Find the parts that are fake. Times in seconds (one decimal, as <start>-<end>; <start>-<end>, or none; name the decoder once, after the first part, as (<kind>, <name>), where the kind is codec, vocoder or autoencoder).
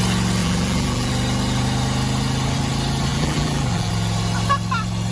0.4-1.1 (vocoder, BigVGAN v2); 3.1-3.9